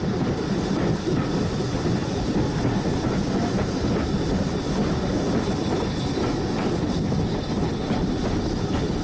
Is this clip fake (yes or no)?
no